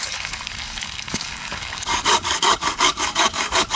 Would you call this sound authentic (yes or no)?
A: no